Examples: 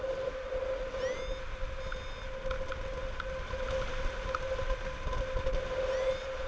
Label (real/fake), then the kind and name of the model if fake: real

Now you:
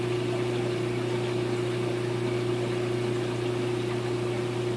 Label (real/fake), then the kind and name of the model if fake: real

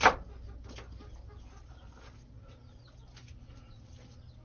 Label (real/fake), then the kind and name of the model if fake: real